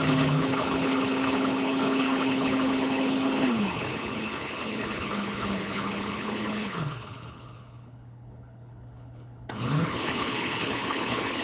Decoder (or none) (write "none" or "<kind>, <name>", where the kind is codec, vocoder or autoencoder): codec, HILCodec